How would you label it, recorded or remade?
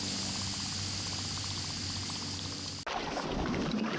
recorded